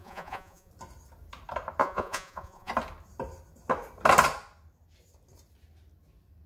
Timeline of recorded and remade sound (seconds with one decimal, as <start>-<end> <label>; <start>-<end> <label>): 0.0-0.7 remade; 0.7-1.8 recorded; 1.8-2.7 remade; 2.7-6.5 recorded